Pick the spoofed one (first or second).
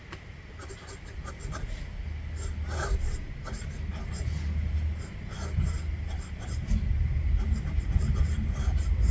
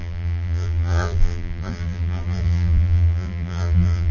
second